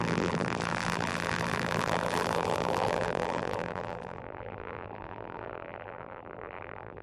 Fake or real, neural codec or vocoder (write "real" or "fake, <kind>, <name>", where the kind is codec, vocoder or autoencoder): fake, vocoder, BigVGAN v2